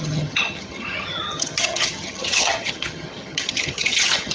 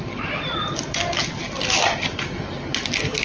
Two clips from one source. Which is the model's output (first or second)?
first